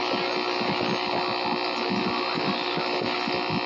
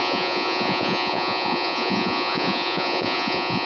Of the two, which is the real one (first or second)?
first